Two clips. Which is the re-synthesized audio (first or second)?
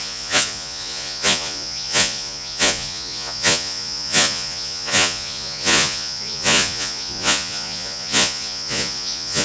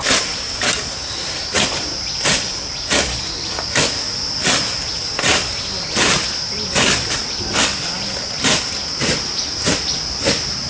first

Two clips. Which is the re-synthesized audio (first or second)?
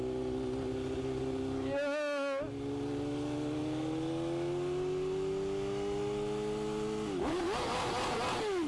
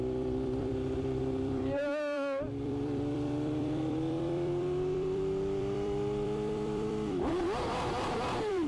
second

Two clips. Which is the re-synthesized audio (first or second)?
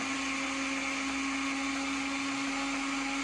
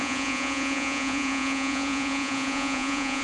second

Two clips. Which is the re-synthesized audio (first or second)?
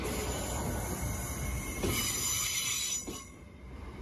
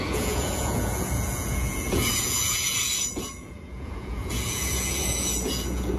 second